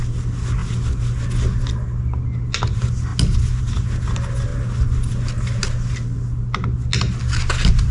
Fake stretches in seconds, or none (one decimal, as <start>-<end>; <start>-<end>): none